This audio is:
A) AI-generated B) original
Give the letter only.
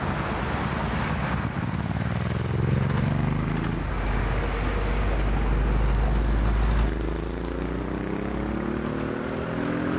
B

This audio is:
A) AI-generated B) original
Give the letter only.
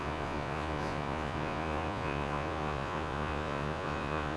A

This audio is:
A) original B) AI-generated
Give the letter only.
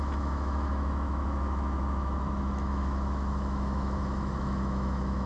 B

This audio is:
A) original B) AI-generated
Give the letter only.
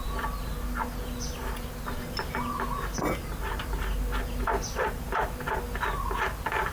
A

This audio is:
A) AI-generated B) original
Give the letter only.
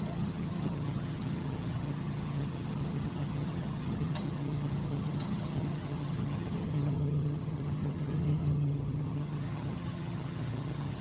A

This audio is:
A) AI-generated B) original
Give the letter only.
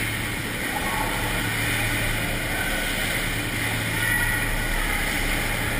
B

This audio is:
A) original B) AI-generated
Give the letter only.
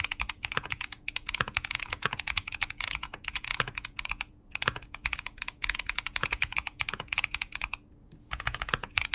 B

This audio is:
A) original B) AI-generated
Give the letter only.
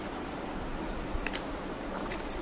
A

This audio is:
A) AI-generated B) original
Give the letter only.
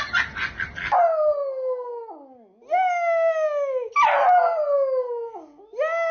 B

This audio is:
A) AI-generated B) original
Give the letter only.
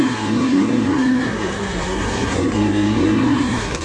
A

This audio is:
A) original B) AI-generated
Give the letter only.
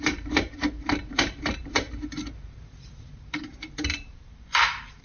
B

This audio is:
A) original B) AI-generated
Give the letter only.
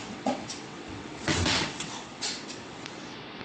B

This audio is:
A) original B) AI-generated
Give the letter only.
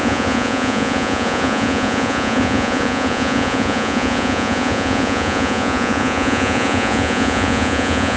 B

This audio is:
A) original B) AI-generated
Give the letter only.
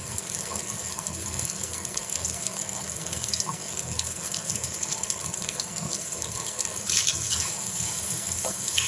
B